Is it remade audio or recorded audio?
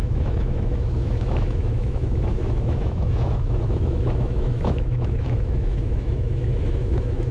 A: remade